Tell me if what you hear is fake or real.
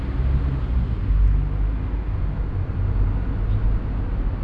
real